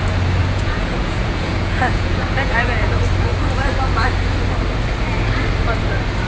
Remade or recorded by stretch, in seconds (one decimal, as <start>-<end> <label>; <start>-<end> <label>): 0.0-0.4 recorded; 0.4-2.9 remade; 2.9-6.3 recorded